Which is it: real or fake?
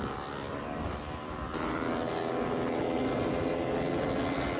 real